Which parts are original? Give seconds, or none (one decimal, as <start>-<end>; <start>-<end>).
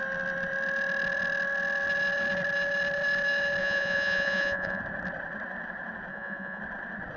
0.0-3.6; 4.8-6.1; 6.6-7.2